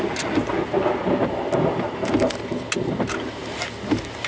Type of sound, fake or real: real